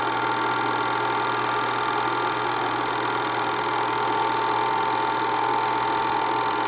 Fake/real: real